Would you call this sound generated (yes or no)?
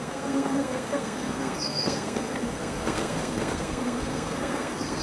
yes